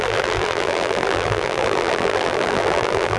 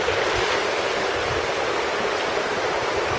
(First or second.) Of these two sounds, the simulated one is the first